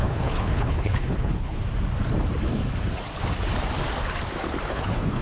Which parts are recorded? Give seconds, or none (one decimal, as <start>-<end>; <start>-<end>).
1.6-4.7